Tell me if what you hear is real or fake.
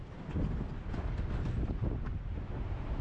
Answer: real